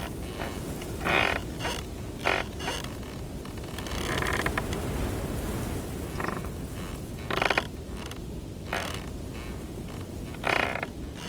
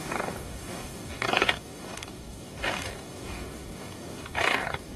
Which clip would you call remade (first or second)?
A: second